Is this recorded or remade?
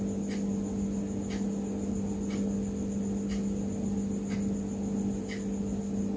recorded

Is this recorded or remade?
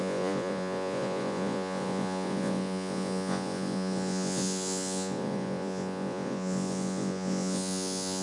remade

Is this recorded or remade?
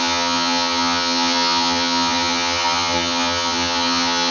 remade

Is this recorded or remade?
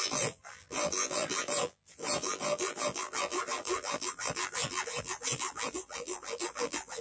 remade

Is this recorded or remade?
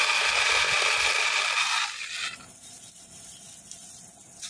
recorded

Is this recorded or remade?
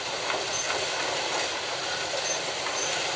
recorded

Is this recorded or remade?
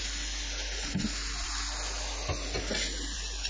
recorded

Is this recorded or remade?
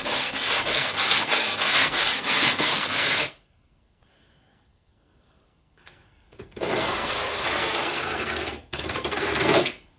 remade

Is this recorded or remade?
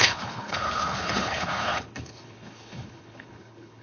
remade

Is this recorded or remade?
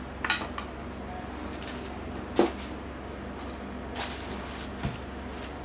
recorded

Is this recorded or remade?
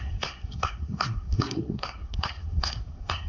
remade